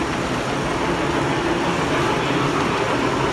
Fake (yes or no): no